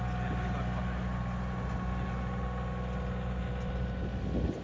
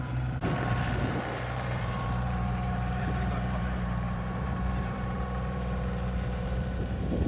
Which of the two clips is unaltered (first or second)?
first